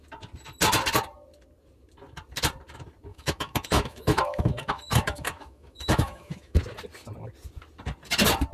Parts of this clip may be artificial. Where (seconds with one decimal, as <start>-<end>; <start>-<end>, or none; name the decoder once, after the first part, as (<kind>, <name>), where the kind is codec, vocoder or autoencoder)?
3.1-6.6 (autoencoder, DAC-VAE)